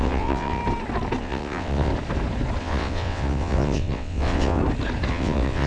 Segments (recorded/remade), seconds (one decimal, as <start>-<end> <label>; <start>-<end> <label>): 0.0-0.6 remade; 0.6-1.2 recorded; 1.2-1.9 remade; 1.9-2.6 recorded; 2.6-4.6 remade; 4.6-5.1 recorded; 5.1-5.7 remade